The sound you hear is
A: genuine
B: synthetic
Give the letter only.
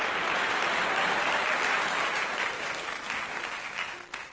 A